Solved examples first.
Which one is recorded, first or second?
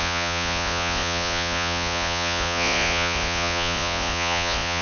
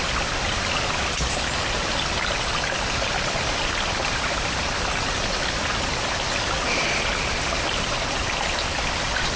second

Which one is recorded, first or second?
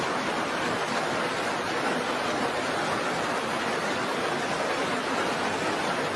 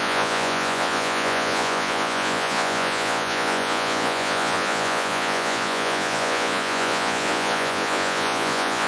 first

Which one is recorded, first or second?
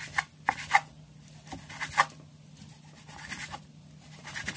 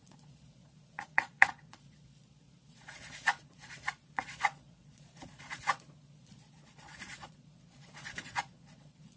first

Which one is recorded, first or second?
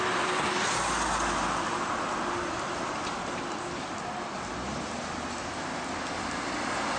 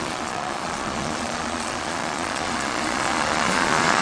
first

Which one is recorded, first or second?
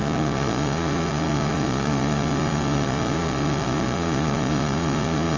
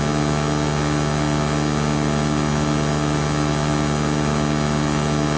second